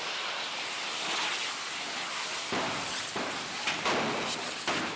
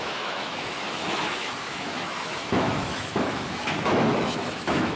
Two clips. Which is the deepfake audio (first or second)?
second